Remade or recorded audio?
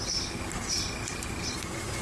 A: recorded